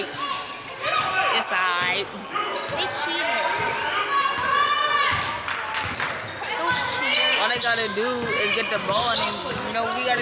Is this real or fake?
real